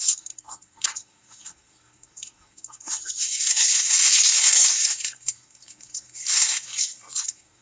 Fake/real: fake